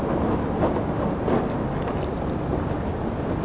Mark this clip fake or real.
real